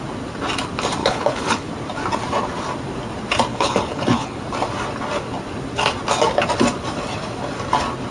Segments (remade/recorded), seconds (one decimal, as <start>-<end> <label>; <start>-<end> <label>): 0.0-1.0 recorded; 1.0-1.7 remade; 1.7-3.5 recorded; 3.5-4.4 remade; 4.4-8.1 recorded